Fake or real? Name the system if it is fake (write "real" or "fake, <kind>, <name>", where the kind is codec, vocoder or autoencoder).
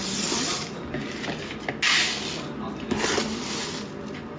real